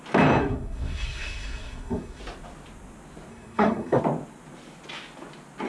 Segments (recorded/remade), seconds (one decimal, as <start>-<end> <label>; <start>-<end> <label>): 0.0-0.4 recorded; 0.4-2.2 remade; 2.2-3.3 recorded; 3.3-4.0 remade; 4.0-5.7 recorded